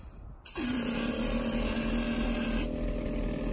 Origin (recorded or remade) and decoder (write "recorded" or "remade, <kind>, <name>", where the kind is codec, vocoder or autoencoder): recorded